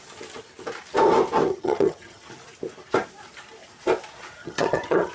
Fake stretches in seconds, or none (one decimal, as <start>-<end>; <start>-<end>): 1.5-2.3; 4.4-5.1